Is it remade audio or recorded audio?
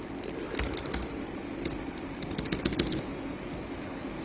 recorded